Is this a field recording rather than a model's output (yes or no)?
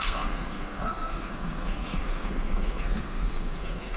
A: no